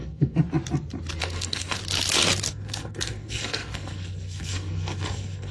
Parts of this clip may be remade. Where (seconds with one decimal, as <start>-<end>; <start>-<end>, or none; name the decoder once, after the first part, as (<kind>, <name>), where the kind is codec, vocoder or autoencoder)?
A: 0.0-0.4 (codec, SNAC); 1.2-1.8; 2.5-5.5